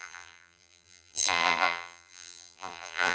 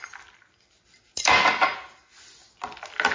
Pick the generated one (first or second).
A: first